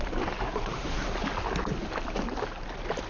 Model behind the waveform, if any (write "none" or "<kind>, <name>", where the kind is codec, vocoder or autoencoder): none